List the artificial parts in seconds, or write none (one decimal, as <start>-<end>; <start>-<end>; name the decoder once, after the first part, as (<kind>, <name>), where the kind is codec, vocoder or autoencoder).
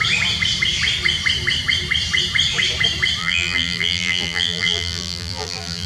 3.2-5.9 (vocoder, BigVGAN v2)